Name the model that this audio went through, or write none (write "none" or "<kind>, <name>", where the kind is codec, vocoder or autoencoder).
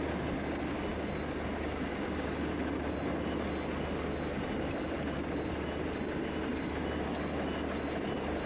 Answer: none